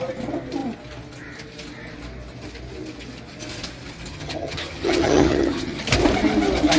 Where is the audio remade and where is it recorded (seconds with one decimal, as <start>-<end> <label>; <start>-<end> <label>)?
0.0-4.1 recorded; 4.1-5.8 remade; 5.8-6.8 recorded